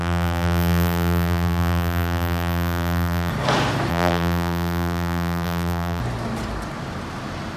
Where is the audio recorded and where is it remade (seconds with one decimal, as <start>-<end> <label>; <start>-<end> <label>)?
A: 0.0-3.3 remade; 3.3-3.9 recorded; 3.9-6.0 remade; 6.0-7.6 recorded